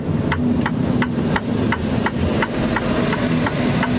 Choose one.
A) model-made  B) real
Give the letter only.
B